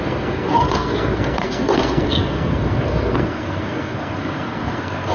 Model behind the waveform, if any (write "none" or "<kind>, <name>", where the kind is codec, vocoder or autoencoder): codec, SNAC